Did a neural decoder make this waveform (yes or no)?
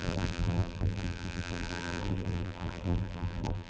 yes